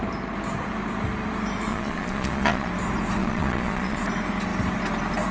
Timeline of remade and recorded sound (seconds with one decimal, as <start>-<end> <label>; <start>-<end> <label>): 0.0-1.7 recorded; 1.7-2.7 remade; 2.7-3.2 recorded; 3.2-4.0 remade; 4.0-5.3 recorded